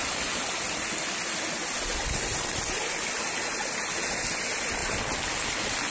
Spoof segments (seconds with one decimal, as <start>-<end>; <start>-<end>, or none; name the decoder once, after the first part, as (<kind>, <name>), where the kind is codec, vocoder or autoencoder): none